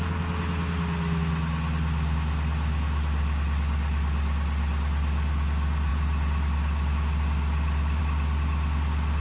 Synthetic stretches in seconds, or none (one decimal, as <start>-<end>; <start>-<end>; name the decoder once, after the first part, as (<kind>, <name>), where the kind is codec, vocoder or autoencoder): none